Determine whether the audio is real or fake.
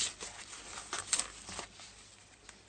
real